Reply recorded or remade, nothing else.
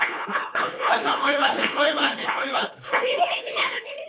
remade